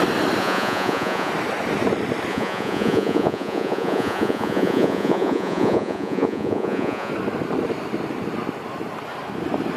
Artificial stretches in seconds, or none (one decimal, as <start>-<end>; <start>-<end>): 0.4-1.3; 2.3-7.1